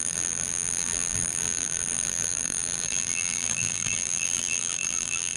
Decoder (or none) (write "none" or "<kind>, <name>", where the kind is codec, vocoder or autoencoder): vocoder, BigVGAN v2